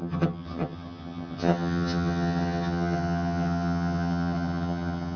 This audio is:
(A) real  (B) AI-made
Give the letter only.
B